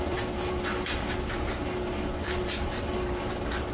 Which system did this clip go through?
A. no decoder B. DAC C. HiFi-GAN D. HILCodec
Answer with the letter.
A